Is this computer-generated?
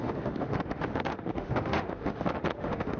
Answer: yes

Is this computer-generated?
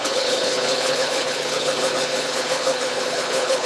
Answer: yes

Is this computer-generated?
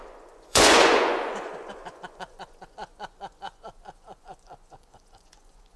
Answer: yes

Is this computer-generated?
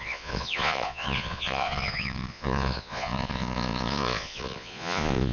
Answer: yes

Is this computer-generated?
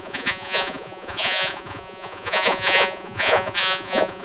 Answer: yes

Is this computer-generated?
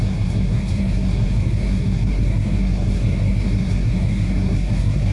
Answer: yes